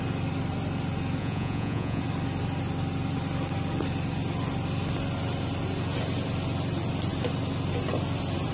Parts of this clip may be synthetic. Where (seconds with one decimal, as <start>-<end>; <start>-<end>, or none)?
1.2-2.0